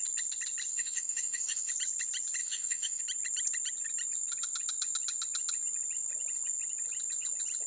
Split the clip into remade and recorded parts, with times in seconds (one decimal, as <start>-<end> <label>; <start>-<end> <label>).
0.0-0.7 recorded; 0.7-1.7 remade; 1.7-2.4 recorded; 2.4-3.0 remade; 3.0-7.7 recorded